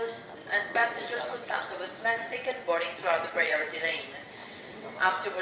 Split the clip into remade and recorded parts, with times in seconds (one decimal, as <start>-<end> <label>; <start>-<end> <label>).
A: 0.0-0.8 recorded; 0.8-4.0 remade; 4.0-4.4 recorded; 4.4-5.4 remade